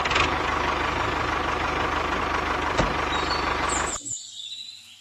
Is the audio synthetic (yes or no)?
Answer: no